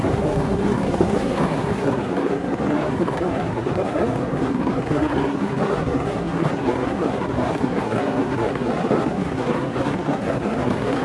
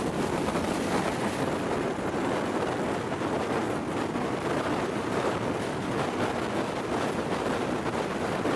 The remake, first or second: first